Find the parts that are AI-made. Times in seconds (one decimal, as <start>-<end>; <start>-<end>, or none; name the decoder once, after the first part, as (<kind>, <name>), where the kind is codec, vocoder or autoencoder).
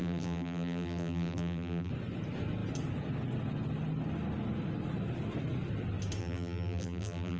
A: 0.0-1.9 (vocoder, BigVGAN v2); 6.2-7.4